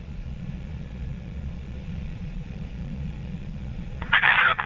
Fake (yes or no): yes